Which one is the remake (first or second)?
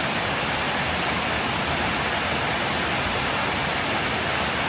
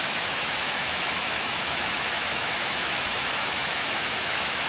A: second